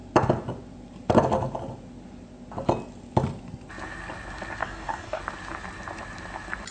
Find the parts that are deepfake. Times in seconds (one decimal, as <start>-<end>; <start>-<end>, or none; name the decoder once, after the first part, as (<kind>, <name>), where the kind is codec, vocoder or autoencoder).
4.6-5.2 (codec, DAC)